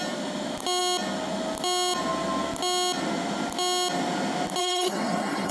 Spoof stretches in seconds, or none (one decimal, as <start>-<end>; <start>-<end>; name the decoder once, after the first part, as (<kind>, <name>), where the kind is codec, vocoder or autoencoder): 4.6-5.5 (codec, SNAC)